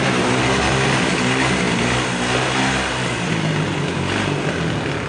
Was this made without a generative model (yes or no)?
yes